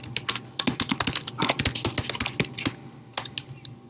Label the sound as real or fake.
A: real